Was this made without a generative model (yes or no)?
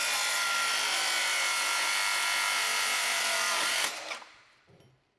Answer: yes